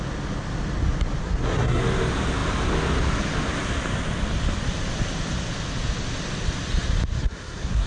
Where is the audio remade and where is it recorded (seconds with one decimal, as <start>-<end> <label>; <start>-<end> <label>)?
0.0-1.2 recorded; 1.2-1.8 remade; 1.8-7.2 recorded; 7.2-7.9 remade